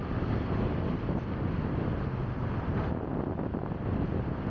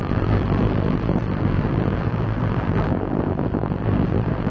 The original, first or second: first